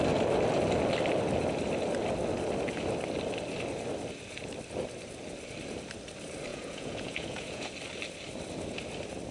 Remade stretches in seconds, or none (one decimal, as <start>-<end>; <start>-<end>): 6.5-7.7